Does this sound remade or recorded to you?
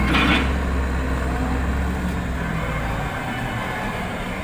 recorded